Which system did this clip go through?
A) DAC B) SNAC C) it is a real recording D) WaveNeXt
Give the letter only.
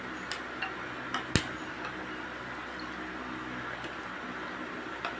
C